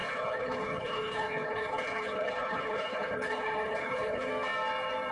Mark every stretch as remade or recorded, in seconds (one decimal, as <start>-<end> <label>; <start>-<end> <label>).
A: 0.0-4.3 remade; 4.3-5.1 recorded